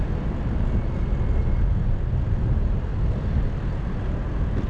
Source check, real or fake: real